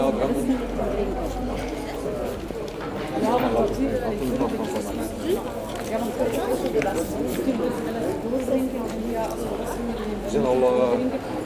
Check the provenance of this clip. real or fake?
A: real